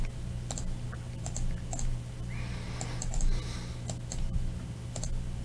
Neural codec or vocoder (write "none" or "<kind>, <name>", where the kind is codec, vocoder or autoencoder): none